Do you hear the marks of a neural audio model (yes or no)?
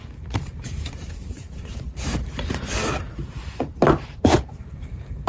yes